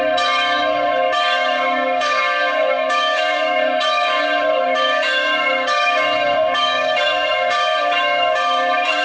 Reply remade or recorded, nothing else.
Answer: remade